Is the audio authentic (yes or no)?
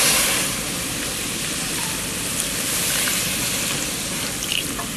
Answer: yes